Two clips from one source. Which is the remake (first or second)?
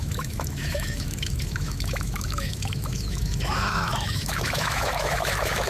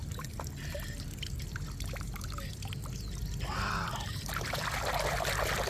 first